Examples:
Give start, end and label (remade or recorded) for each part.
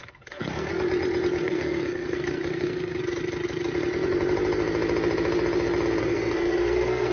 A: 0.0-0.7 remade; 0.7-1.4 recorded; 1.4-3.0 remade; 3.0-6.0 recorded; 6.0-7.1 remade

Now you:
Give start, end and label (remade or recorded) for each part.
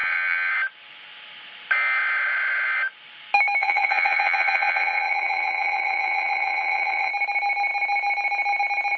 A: 0.0-0.5 remade; 0.5-3.6 recorded; 3.6-7.1 remade; 7.1-9.0 recorded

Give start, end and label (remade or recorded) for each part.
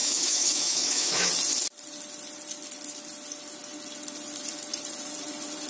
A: 0.0-1.3 remade; 1.3-5.7 recorded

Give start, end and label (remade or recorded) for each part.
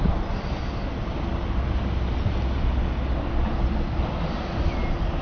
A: 0.0-5.2 recorded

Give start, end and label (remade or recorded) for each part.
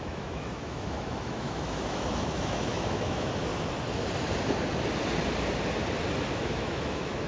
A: 0.0-3.5 remade; 3.5-6.3 recorded; 6.3-7.3 remade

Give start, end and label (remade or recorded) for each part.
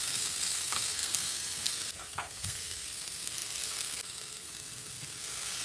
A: 0.0-5.6 remade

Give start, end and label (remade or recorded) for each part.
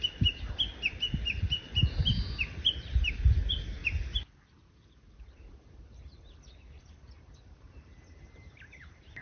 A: 0.0-3.8 recorded; 3.8-9.2 remade